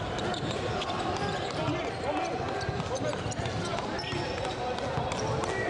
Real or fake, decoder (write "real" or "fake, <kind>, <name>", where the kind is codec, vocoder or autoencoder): real